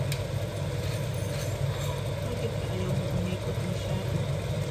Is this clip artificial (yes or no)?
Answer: no